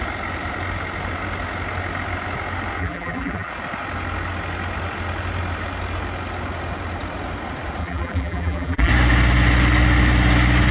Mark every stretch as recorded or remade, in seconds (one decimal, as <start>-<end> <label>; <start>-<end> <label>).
0.0-2.8 recorded; 2.8-3.5 remade; 3.5-7.8 recorded; 7.8-8.9 remade; 8.9-10.7 recorded